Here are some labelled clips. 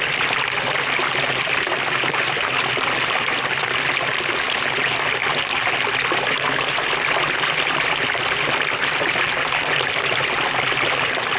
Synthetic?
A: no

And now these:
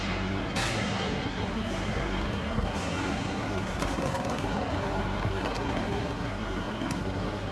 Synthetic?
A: yes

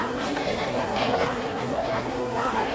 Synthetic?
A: yes